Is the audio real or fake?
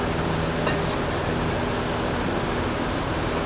real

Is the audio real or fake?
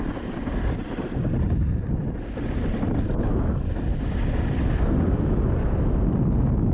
real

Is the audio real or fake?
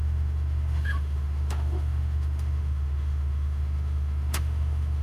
fake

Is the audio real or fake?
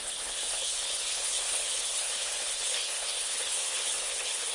fake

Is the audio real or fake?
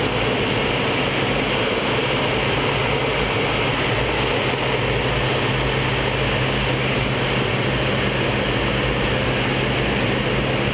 real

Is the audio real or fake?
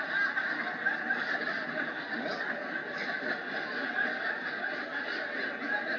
real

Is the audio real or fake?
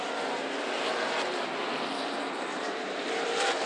fake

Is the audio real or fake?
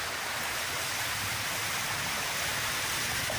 real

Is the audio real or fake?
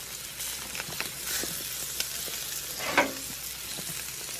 real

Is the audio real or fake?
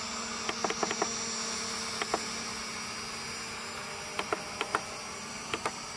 real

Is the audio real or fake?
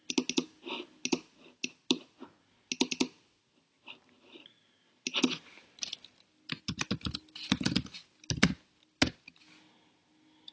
real